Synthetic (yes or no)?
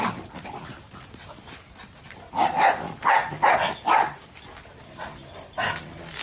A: no